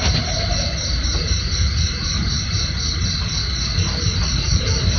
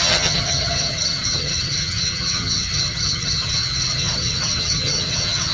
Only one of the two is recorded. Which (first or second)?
first